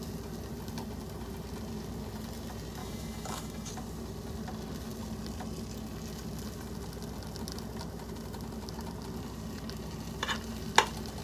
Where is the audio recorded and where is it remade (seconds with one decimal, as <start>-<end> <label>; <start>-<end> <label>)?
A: 0.0-2.8 recorded; 2.8-3.7 remade; 3.7-11.2 recorded